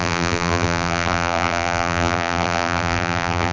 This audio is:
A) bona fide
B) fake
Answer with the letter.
B